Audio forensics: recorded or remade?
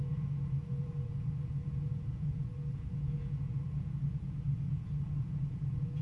remade